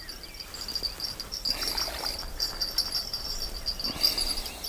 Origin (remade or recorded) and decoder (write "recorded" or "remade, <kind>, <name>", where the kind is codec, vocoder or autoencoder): recorded